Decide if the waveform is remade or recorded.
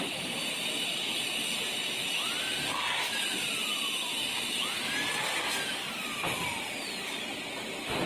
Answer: recorded